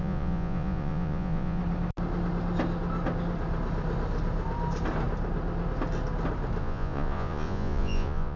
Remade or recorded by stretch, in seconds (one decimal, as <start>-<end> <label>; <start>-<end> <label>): 0.0-1.6 remade; 1.6-6.6 recorded; 6.6-8.4 remade